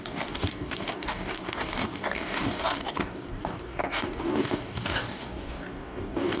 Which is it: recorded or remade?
remade